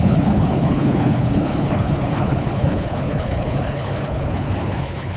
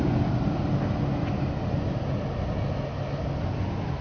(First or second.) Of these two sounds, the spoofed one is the first